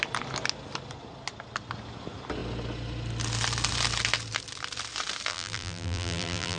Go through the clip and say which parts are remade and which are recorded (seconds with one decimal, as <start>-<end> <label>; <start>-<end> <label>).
0.0-5.3 recorded; 5.3-6.6 remade